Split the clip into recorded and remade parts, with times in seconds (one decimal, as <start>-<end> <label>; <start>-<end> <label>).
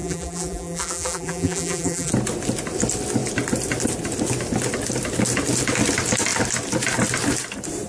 0.0-2.1 remade; 2.1-7.9 recorded